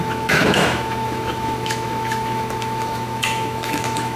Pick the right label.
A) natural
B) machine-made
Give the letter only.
B